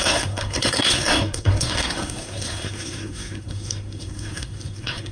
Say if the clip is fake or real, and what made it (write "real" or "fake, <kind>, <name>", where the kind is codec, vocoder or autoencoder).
fake, codec, SNAC